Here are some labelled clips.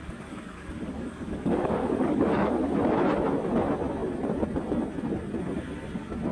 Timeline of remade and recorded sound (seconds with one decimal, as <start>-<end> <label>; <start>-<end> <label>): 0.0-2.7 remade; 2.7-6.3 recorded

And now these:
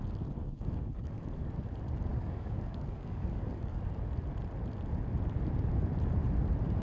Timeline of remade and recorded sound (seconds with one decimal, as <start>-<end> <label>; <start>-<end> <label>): 0.0-0.4 recorded; 0.4-1.5 remade; 1.5-2.1 recorded; 2.1-3.8 remade; 3.8-6.8 recorded

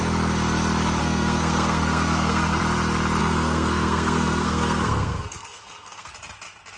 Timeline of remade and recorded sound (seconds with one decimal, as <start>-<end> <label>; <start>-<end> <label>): 0.0-1.0 recorded; 1.0-2.6 remade; 2.6-3.2 recorded; 3.2-6.1 remade; 6.1-6.8 recorded